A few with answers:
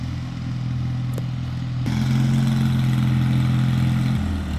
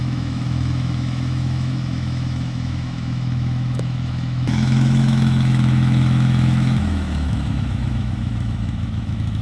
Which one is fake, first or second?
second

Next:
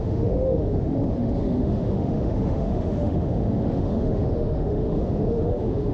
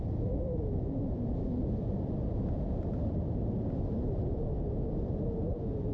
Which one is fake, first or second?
first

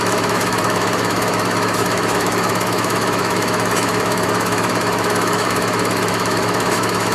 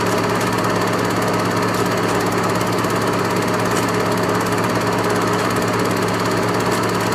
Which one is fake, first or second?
first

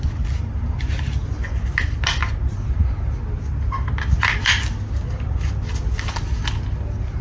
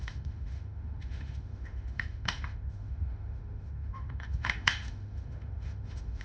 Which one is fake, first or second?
second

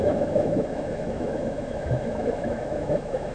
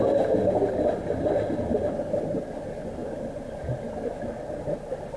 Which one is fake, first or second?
first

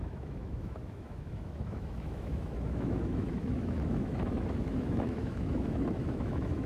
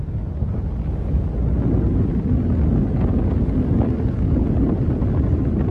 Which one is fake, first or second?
first